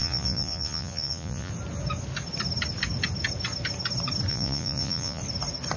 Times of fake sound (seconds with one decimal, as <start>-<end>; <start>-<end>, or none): 0.0-1.5; 4.3-5.2